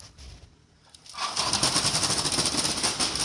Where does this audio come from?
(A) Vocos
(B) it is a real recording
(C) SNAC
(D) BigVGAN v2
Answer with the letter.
B